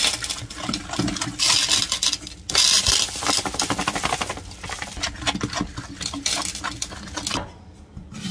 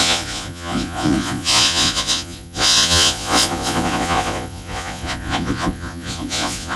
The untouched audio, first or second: first